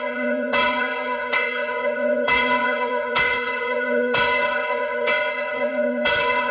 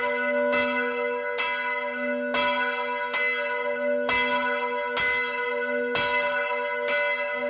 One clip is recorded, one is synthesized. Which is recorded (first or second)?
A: second